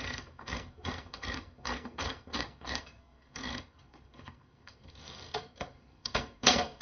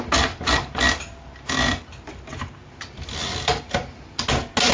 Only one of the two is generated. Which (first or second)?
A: first